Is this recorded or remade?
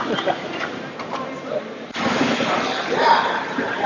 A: remade